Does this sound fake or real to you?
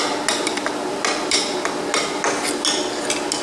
real